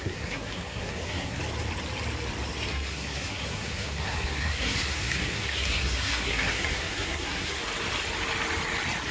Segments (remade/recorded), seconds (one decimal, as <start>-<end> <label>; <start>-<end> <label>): 0.0-1.4 remade; 1.4-2.7 recorded; 2.7-7.6 remade; 7.6-9.1 recorded